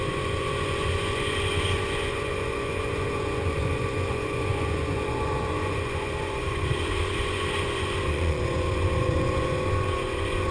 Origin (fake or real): fake